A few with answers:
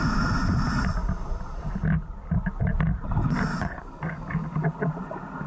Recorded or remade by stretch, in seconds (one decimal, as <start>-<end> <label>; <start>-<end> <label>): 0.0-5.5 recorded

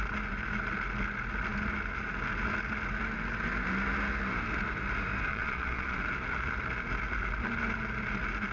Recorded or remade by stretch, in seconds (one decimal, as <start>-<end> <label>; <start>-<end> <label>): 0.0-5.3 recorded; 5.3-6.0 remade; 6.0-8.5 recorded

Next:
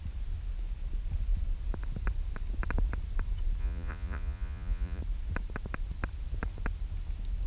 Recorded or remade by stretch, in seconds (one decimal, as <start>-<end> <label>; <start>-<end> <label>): 0.0-3.6 recorded; 3.6-5.0 remade; 5.0-7.5 recorded

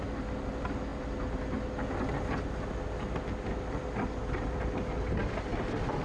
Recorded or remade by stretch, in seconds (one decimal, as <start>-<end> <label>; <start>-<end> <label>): 0.0-6.0 recorded

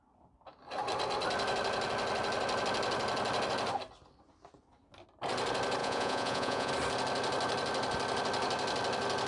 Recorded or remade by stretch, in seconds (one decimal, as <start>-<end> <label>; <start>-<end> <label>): 0.0-5.8 recorded; 5.8-6.7 remade; 6.7-9.3 recorded

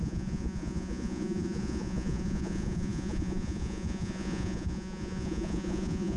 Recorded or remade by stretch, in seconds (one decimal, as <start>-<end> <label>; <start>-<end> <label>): 0.0-6.2 remade